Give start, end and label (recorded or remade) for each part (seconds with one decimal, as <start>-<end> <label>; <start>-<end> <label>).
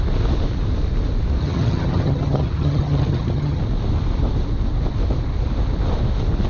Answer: 0.0-1.4 recorded; 1.4-3.6 remade; 3.6-6.5 recorded